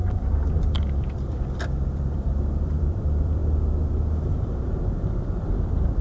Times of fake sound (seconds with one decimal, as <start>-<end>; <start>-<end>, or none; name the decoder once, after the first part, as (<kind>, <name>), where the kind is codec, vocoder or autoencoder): 0.0-3.4 (vocoder, BigVGAN v2); 4.3-6.0